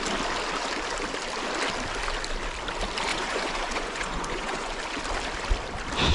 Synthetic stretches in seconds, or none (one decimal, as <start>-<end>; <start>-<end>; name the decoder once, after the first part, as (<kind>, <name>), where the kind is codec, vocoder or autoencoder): 3.1-4.8 (vocoder, Vocos)